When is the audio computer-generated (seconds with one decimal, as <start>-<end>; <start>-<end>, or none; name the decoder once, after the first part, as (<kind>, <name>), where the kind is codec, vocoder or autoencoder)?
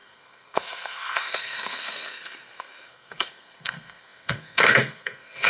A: 0.0-5.5 (codec, SNAC)